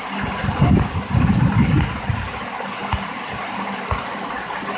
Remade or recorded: recorded